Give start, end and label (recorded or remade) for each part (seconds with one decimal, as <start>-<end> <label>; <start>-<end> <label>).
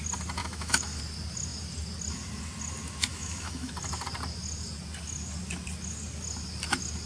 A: 0.0-0.4 recorded; 0.4-1.0 remade; 1.0-3.1 recorded; 3.1-3.7 remade; 3.7-7.1 recorded